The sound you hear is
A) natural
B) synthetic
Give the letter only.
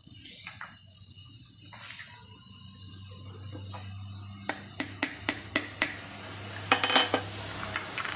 A